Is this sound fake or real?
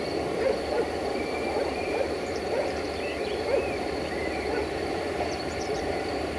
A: fake